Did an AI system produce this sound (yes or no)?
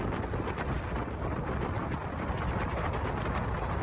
no